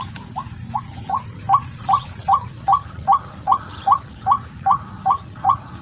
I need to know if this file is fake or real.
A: fake